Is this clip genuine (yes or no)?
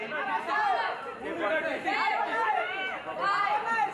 yes